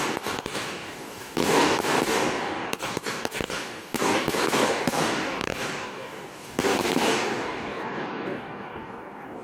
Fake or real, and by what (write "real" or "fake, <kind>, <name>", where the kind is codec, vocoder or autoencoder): fake, codec, DAC